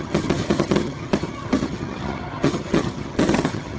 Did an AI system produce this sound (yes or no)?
yes